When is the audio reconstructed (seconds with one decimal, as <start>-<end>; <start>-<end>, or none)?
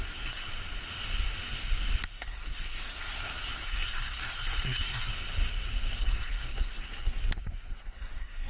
0.0-0.5; 2.2-5.1; 6.0-7.2; 7.7-8.5